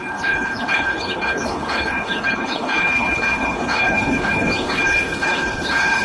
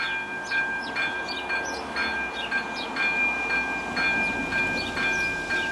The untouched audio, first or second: second